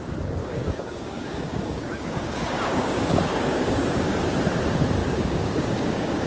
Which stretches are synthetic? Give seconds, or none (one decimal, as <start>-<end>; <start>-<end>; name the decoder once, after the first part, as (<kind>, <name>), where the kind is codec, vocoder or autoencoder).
0.4-4.2 (codec, DAC); 5.0-6.3